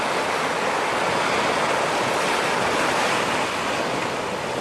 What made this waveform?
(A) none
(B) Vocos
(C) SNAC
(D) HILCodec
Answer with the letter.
A